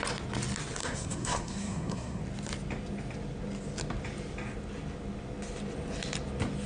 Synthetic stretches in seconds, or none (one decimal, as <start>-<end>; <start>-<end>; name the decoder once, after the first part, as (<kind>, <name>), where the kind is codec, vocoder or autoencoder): 0.8-2.2 (codec, SNAC)